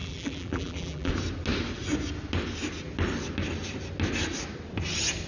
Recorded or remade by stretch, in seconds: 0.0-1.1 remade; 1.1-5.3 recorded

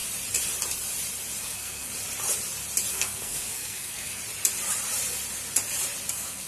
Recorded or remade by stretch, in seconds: 0.0-1.4 recorded; 1.4-1.9 remade; 1.9-2.9 recorded; 2.9-4.2 remade; 4.2-6.1 recorded; 6.1-6.5 remade

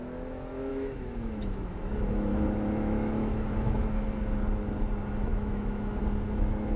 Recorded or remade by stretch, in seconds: 0.0-0.7 recorded; 0.7-4.0 remade; 4.0-5.3 recorded; 5.3-6.0 remade; 6.0-6.8 recorded

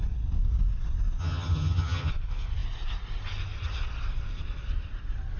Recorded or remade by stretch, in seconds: 0.0-1.2 recorded; 1.2-2.1 remade; 2.1-5.4 recorded

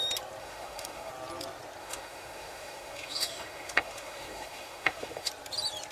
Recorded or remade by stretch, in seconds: 0.0-0.4 recorded; 0.4-1.1 remade; 1.1-1.8 recorded; 1.8-5.3 remade; 5.3-5.9 recorded

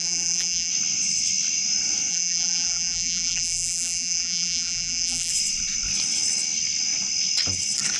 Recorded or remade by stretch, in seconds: 0.0-0.7 remade; 0.7-2.1 recorded; 2.1-5.3 remade; 5.3-8.0 recorded